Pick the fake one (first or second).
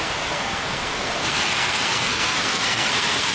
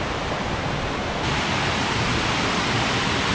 first